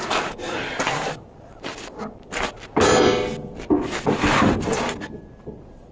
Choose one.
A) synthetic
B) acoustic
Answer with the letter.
B